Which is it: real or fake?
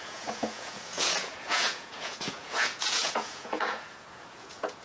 fake